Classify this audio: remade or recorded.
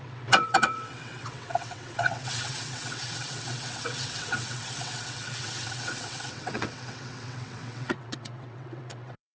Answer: remade